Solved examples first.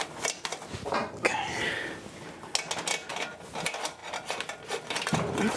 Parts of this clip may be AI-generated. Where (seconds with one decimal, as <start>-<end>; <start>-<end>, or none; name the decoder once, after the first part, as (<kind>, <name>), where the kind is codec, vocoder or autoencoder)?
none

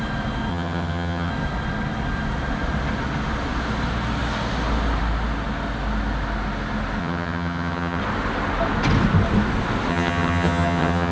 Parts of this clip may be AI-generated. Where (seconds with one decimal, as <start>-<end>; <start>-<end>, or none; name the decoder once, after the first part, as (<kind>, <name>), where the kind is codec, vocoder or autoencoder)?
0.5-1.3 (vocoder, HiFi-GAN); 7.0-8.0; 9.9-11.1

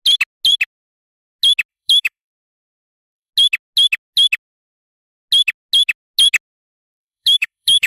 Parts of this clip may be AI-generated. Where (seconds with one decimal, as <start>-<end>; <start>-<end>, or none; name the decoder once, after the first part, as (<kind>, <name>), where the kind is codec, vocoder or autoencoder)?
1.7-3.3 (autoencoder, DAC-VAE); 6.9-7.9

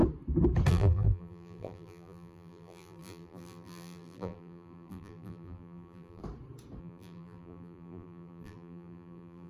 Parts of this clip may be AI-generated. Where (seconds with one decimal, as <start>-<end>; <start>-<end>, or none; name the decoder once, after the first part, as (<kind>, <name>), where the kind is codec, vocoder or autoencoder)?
0.7-6.2 (vocoder, BigVGAN v2); 6.8-9.5